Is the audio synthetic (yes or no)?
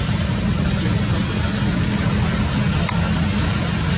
no